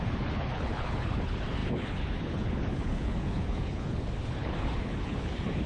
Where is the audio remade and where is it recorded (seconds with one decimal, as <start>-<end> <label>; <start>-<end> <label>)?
0.0-5.7 remade